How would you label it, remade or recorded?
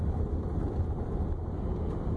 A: recorded